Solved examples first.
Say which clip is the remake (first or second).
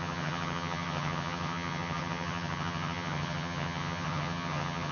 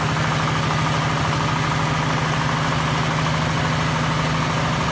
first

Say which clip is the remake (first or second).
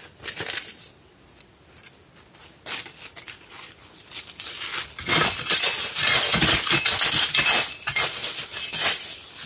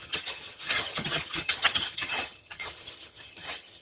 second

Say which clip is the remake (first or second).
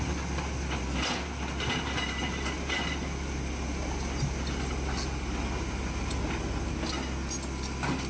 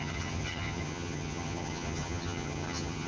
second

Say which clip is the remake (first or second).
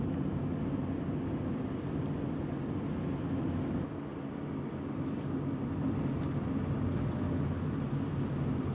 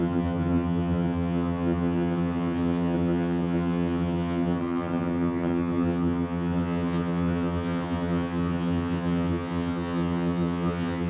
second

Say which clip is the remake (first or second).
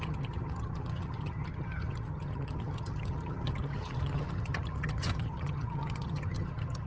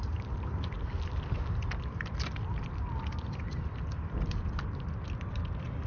first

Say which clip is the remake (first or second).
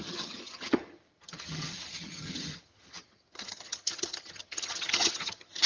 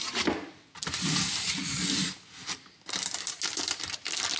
first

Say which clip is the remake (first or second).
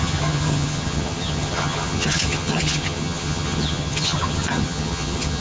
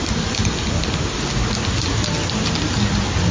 first